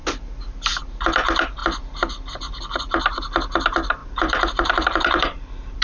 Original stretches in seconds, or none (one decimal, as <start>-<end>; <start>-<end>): 0.0-4.0